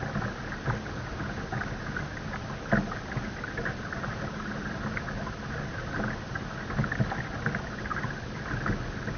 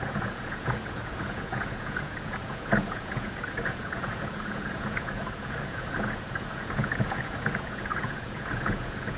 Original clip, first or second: first